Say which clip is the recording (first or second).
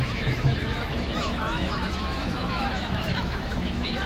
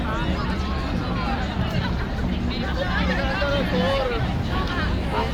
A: second